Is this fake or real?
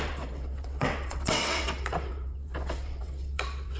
fake